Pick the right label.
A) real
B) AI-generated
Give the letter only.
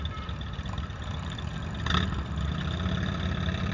B